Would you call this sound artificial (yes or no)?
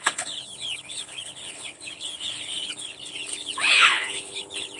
yes